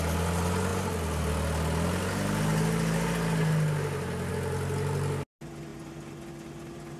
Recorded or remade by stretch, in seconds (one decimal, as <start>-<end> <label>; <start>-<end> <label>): 0.0-7.0 recorded